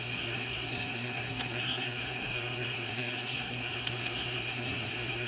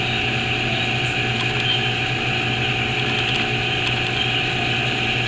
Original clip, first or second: second